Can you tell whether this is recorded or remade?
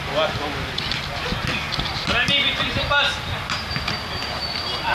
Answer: recorded